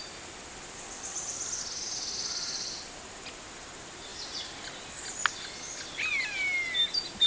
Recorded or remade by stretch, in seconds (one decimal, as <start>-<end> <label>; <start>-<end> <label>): 0.0-7.3 recorded